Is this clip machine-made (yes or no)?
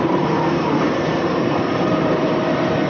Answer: yes